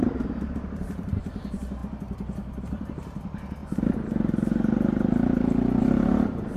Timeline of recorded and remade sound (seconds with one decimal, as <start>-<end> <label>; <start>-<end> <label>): 0.0-1.8 remade; 1.8-2.6 recorded; 2.6-3.6 remade; 3.6-5.8 recorded; 5.8-6.6 remade